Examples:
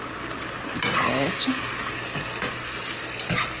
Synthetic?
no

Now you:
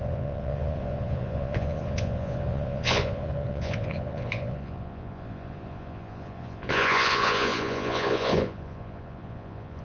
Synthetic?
yes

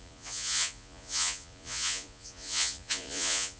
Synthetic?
yes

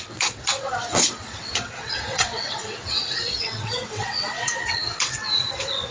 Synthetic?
yes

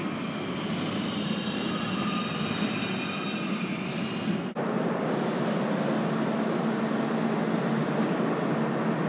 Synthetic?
no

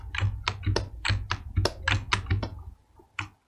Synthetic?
no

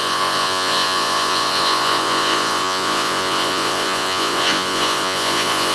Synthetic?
yes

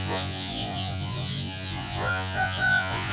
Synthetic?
yes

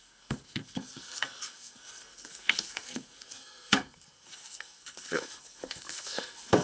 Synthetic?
yes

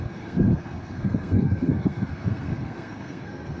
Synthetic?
yes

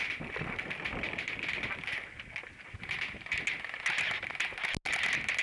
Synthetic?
no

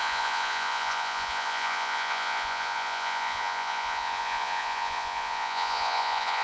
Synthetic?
yes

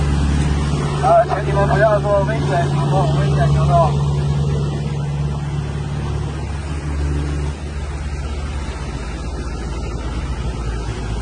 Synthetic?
no